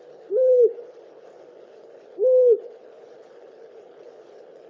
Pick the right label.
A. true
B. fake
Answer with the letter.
B